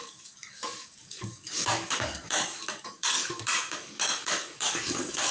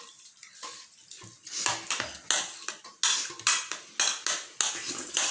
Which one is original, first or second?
second